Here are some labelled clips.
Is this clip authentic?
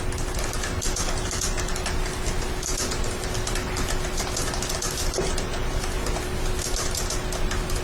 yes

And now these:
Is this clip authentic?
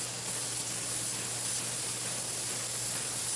yes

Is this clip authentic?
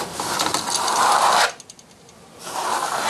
yes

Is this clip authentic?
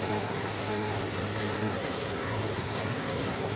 no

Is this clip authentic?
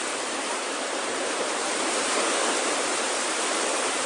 no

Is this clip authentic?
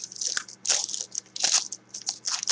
yes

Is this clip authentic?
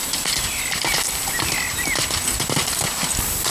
yes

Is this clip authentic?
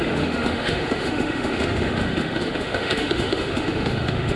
no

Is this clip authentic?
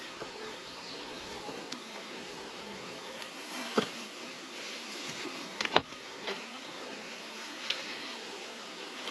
no